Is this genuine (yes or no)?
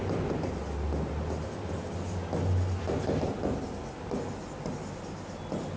yes